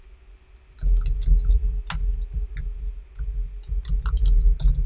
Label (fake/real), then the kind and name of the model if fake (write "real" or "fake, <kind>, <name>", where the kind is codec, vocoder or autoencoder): real